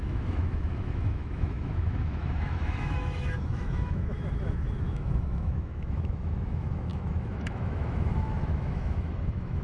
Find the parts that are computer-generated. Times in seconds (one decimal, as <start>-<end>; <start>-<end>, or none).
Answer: 0.0-9.6